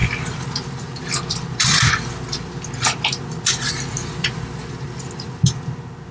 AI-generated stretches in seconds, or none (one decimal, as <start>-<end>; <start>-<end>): none